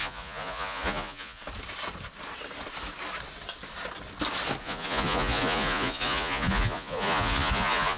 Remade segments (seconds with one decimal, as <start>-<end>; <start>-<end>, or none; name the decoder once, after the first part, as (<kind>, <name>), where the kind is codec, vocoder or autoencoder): 0.0-1.4 (vocoder, Vocos); 4.6-8.0